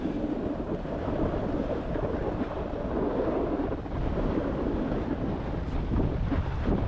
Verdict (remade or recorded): recorded